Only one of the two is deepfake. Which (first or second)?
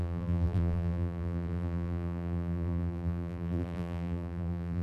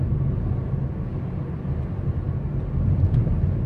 first